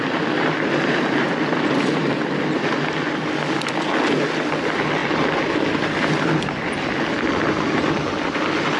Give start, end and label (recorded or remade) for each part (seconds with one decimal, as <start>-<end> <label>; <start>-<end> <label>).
0.0-8.8 recorded